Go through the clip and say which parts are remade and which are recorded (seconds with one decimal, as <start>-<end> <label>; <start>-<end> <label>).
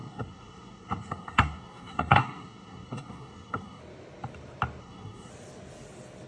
0.0-3.8 remade; 3.8-4.8 recorded; 4.8-5.3 remade; 5.3-6.3 recorded